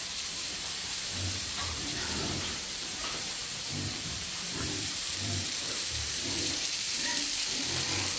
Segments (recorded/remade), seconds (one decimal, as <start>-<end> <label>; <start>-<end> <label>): 0.0-7.1 remade; 7.1-8.2 recorded